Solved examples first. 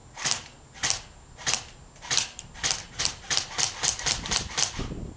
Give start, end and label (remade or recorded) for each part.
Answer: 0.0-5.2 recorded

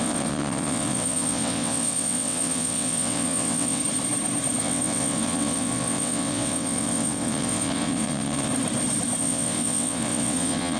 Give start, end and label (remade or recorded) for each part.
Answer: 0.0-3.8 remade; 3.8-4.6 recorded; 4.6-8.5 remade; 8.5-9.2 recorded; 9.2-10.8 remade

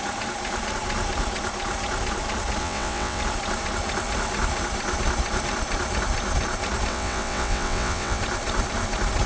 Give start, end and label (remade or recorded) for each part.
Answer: 0.0-2.6 recorded; 2.6-3.2 remade; 3.2-6.9 recorded; 6.9-8.2 remade; 8.2-9.3 recorded

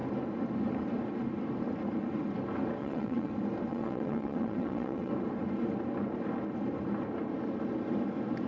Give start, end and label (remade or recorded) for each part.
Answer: 0.0-2.8 recorded; 2.8-3.3 remade; 3.3-3.7 recorded; 3.7-5.1 remade; 5.1-8.5 recorded

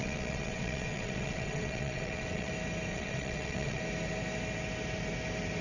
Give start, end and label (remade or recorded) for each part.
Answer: 0.0-2.5 remade; 2.5-2.9 recorded; 2.9-3.8 remade; 3.8-5.6 recorded

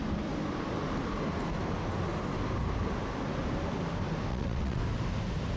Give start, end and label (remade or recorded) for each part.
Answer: 0.0-4.3 recorded; 4.3-4.8 remade; 4.8-5.6 recorded

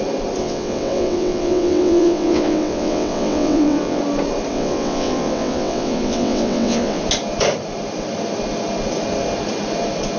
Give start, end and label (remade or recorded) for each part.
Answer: 0.0-0.4 recorded; 0.4-4.0 remade; 4.0-4.5 recorded; 4.5-7.0 remade; 7.0-10.2 recorded